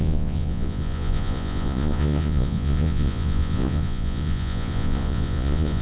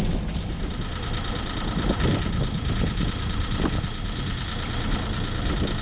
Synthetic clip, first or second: first